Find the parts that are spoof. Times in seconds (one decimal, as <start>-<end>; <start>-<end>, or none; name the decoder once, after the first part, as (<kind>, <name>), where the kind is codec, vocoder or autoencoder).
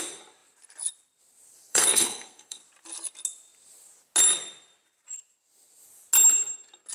1.7-2.6 (codec, SNAC)